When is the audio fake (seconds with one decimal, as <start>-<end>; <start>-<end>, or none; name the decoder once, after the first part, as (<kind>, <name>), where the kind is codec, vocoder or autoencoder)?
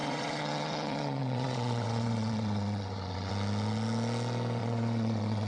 0.0-3.3 (vocoder, WaveNeXt); 4.6-5.5